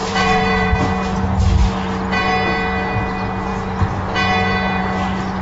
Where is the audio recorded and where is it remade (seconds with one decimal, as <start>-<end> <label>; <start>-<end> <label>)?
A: 0.0-0.8 remade; 0.8-5.4 recorded